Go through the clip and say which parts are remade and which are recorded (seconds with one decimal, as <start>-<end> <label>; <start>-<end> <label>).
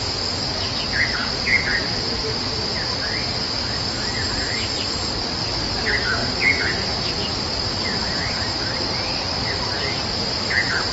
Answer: 0.0-1.2 recorded; 1.2-2.2 remade; 2.2-6.2 recorded; 6.2-7.2 remade; 7.2-10.9 recorded